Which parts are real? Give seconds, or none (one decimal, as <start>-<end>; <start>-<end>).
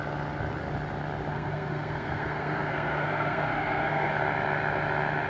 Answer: 0.0-1.3; 4.1-5.3